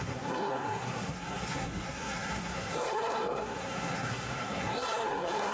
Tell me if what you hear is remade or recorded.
remade